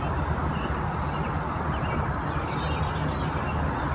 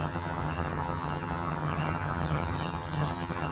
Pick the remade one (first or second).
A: second